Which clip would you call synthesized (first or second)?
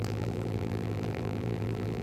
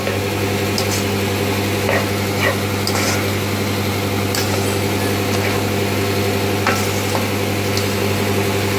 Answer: first